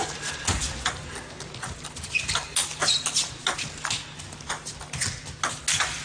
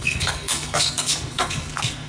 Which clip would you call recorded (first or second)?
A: first